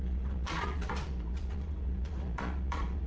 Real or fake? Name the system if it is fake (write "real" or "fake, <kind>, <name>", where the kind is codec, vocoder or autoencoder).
fake, vocoder, Vocos